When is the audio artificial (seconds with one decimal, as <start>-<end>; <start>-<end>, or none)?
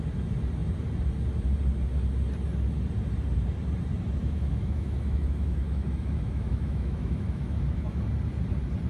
4.2-8.0